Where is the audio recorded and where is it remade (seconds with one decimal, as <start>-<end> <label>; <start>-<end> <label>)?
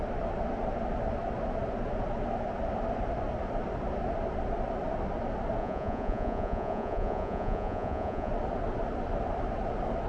0.0-5.6 recorded; 5.6-8.3 remade; 8.3-10.1 recorded